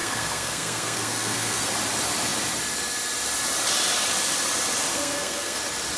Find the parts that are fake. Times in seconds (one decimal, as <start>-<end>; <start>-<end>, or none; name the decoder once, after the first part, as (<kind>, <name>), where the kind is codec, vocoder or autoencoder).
0.0-1.7 (codec, SNAC); 4.9-5.6